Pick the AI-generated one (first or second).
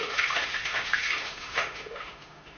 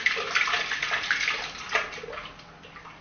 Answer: first